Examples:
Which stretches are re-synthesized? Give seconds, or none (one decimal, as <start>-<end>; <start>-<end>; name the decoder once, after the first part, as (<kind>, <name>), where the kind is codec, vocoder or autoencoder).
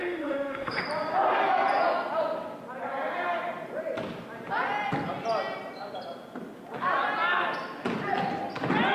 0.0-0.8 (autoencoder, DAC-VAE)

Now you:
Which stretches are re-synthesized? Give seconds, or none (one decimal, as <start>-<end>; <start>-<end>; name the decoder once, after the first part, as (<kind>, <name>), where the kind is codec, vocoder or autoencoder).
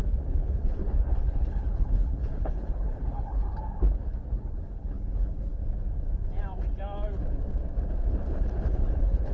0.0-3.5 (codec, HILCodec); 4.3-5.6; 8.6-9.3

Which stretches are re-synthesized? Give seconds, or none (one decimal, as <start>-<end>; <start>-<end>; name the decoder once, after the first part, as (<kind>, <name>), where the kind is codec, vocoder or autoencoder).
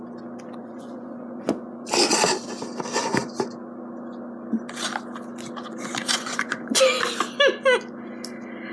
0.6-1.7 (vocoder, Vocos); 5.7-6.8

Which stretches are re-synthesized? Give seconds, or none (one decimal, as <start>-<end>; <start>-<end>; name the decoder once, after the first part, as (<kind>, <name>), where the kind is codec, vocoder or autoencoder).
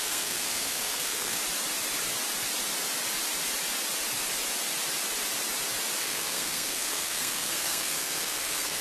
0.0-1.4 (codec, SNAC); 6.0-8.8